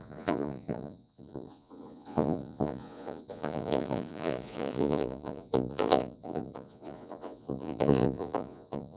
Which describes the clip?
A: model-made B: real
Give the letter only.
A